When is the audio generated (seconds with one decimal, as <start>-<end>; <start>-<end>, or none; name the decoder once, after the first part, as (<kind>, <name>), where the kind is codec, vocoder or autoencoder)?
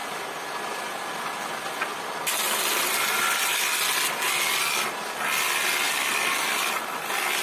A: none